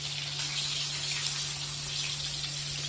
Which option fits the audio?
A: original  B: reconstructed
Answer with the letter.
A